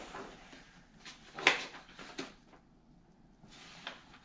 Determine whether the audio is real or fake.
real